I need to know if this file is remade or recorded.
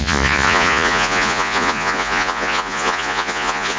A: remade